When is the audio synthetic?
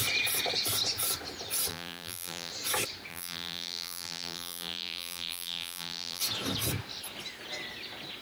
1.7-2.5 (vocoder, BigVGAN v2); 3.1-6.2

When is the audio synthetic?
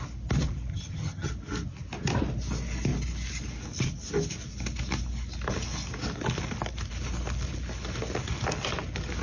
0.7-1.3 (vocoder, HiFi-GAN)